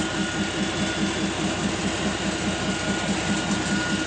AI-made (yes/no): no